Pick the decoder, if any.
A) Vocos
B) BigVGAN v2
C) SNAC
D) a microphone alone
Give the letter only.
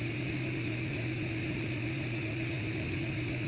D